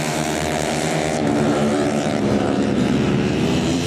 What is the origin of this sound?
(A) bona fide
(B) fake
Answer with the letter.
B